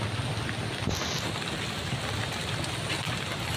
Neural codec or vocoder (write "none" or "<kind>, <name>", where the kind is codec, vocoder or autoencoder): none